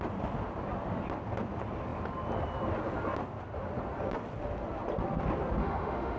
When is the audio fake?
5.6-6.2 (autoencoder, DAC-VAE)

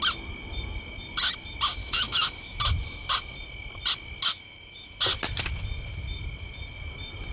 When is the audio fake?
1.8-2.6 (autoencoder, DAC-VAE); 4.3-5.0

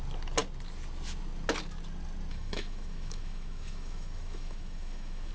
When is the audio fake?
2.3-5.3 (autoencoder, DAC-VAE)